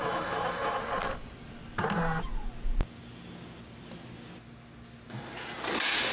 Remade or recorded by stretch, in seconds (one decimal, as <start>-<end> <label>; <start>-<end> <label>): 0.0-0.8 remade; 0.8-6.1 recorded